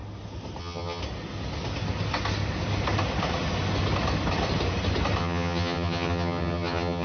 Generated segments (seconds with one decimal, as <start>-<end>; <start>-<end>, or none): 0.6-1.0; 5.2-7.0